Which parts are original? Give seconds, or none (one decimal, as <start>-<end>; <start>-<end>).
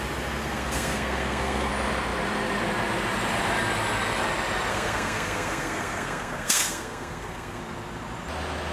0.0-0.4; 1.7-4.7; 7.6-8.7